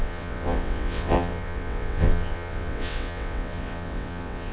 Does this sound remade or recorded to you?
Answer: remade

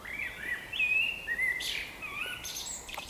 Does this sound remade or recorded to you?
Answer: remade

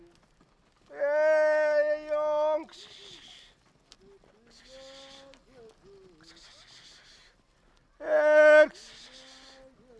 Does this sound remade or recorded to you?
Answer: recorded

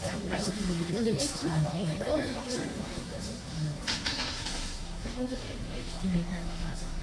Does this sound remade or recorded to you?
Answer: remade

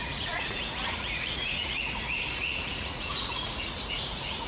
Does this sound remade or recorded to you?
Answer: remade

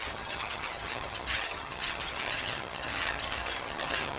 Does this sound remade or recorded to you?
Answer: remade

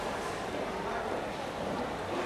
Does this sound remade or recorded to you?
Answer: recorded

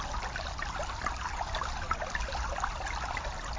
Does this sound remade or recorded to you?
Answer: recorded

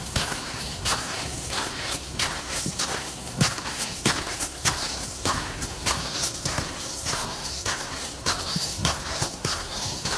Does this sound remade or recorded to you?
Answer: remade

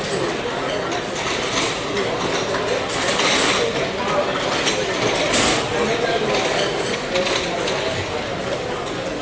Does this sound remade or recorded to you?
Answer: recorded